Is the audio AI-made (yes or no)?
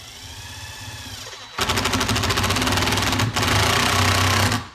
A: no